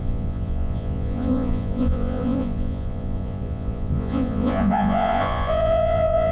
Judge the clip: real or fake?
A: fake